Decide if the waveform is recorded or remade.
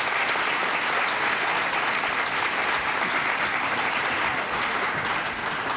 recorded